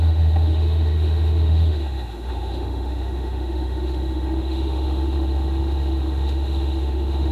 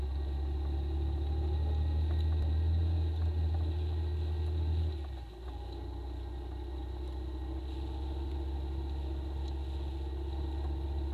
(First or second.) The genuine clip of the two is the second